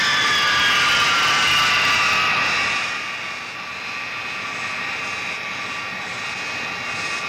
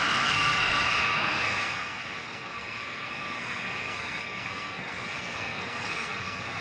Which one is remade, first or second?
second